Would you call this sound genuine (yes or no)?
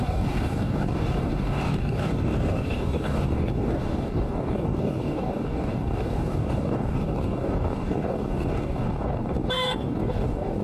no